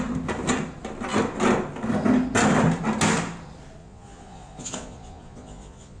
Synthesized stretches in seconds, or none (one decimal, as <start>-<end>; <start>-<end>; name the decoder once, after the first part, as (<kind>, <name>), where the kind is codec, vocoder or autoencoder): 3.8-6.0 (vocoder, Vocos)